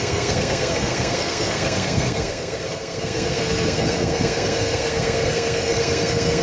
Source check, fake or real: fake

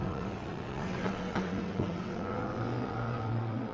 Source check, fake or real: fake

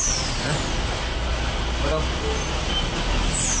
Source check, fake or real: real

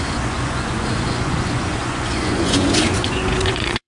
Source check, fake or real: fake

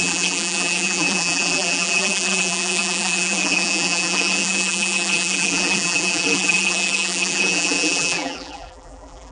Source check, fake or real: fake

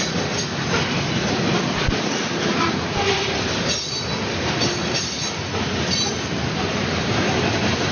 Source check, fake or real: real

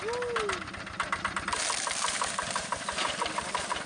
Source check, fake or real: real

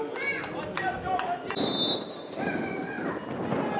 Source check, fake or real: real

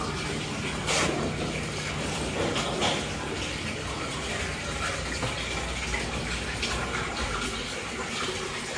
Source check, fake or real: real